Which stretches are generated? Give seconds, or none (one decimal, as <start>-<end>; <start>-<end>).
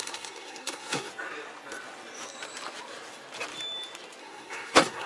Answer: 0.0-1.1; 4.2-5.1